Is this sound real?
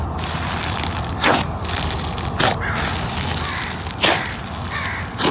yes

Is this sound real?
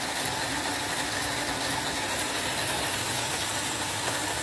yes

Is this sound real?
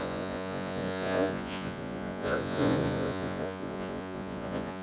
no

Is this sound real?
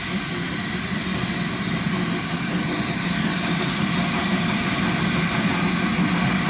yes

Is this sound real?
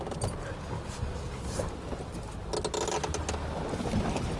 yes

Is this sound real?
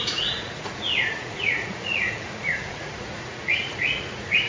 no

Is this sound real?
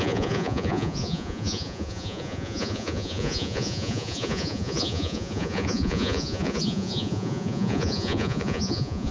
no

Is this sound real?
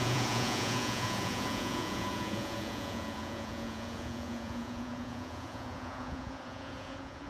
no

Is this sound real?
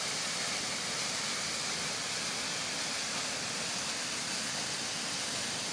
yes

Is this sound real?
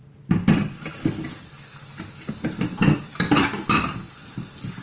yes